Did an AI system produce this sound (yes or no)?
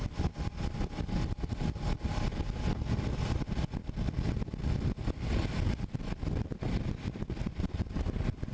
no